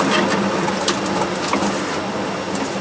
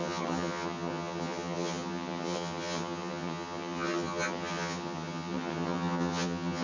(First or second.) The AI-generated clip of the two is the second